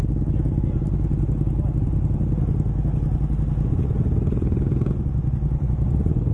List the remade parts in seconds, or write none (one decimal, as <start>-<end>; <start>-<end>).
3.7-6.3